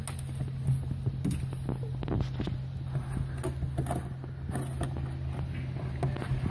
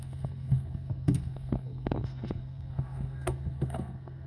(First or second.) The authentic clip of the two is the first